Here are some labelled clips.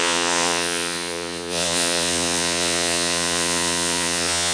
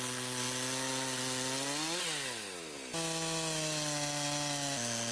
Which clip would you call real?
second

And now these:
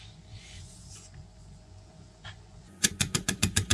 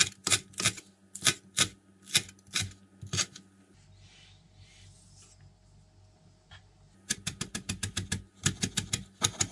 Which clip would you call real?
second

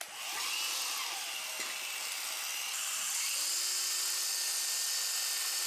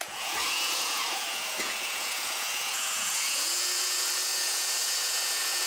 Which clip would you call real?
first